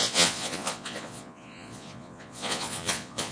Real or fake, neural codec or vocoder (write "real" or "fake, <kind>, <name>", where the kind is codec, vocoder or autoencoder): fake, vocoder, Vocos